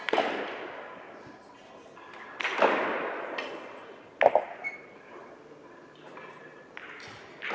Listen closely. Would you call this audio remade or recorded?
recorded